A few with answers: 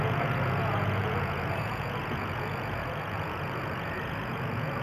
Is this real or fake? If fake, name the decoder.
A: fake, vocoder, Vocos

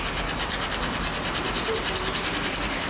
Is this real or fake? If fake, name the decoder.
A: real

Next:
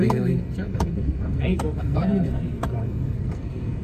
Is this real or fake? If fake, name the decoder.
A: fake, codec, SNAC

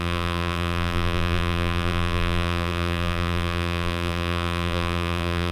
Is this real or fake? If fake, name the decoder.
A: fake, vocoder, BigVGAN v2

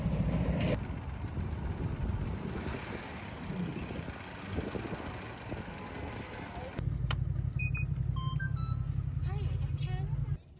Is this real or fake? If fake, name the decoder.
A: real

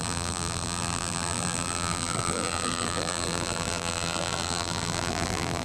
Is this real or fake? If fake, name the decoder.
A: fake, vocoder, BigVGAN v2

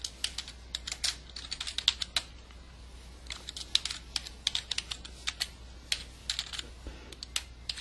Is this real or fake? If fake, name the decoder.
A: real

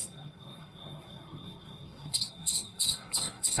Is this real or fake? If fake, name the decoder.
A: fake, codec, SNAC